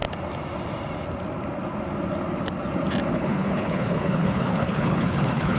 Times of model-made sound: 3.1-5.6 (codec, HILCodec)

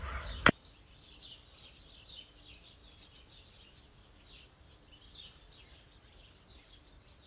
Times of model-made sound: none

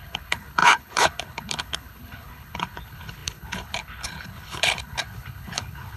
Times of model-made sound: 0.0-6.0 (codec, HILCodec)

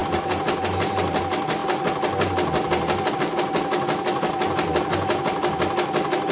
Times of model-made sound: none

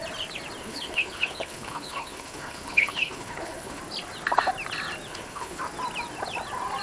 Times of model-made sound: 0.6-3.8 (codec, HILCodec); 5.1-5.6

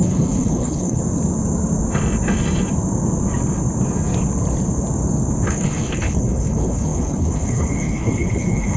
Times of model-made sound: 0.0-1.0 (codec, HILCodec); 5.5-8.8